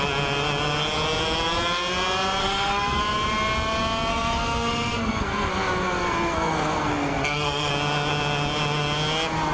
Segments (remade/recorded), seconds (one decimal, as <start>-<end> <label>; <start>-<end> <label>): 0.0-2.4 recorded; 2.4-3.0 remade; 3.0-4.1 recorded; 4.1-7.7 remade; 7.7-9.5 recorded